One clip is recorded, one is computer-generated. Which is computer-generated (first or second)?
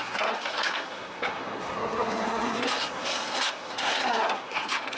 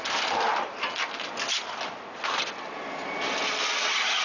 first